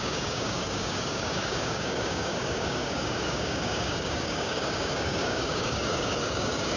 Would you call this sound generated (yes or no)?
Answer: yes